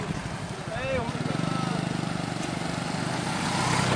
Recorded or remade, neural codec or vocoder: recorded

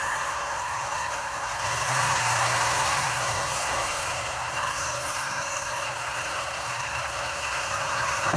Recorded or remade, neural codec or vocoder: remade, codec, SNAC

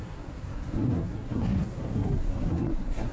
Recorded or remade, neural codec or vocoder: remade, codec, SNAC